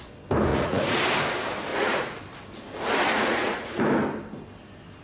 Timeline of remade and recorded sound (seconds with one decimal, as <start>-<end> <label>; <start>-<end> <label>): 0.0-0.5 recorded; 0.5-1.0 remade; 1.0-1.7 recorded; 1.7-2.2 remade; 2.2-3.1 recorded; 3.1-3.8 remade; 3.8-5.0 recorded